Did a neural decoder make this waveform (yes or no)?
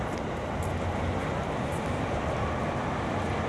no